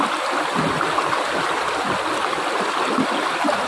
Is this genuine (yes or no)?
yes